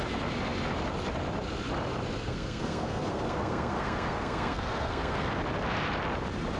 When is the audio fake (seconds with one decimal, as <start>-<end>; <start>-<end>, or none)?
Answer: 2.2-5.3